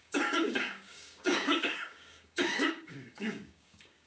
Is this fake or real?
fake